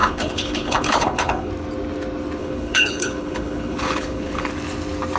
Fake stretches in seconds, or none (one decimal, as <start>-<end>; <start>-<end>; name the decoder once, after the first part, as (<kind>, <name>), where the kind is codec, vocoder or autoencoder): 0.0-1.5 (codec, HILCodec); 2.4-4.5